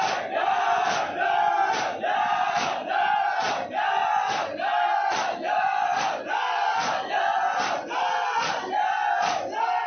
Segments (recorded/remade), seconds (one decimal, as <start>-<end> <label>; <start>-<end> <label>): 0.0-9.9 recorded